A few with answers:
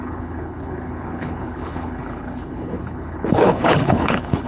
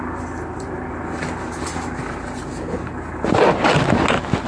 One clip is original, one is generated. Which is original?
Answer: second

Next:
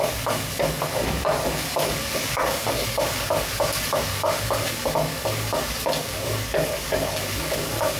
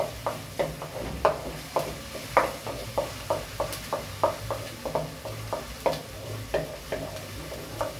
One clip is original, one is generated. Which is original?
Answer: second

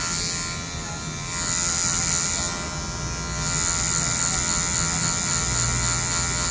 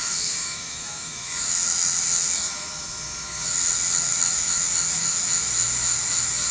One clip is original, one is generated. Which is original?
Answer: first